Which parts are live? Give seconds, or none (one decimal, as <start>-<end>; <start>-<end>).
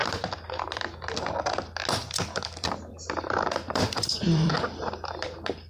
0.8-2.0; 4.5-5.7